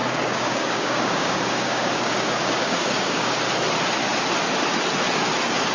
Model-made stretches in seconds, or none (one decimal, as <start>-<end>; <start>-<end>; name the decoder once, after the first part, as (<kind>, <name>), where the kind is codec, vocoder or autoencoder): 0.0-3.4 (codec, DAC)